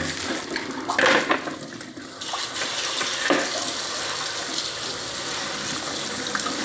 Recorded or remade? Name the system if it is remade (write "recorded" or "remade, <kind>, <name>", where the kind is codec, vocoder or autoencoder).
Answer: recorded